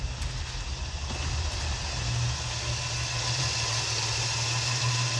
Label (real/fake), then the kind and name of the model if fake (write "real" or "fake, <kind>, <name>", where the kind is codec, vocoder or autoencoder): real